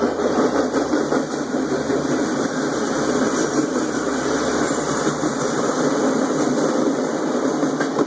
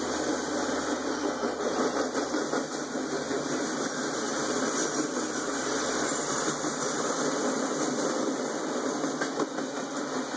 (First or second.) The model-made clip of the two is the first